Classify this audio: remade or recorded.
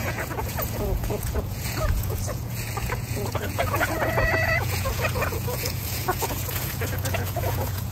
remade